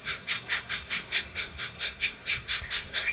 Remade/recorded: remade